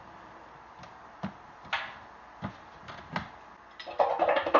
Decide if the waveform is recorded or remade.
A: recorded